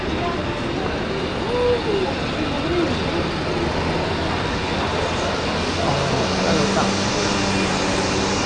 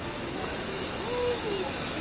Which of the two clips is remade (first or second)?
second